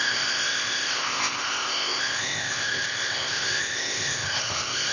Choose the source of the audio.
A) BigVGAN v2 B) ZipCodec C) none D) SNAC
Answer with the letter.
B